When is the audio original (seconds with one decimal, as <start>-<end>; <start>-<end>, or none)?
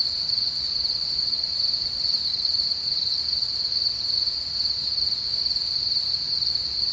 none